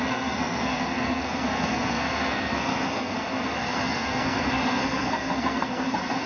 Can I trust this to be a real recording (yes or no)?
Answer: no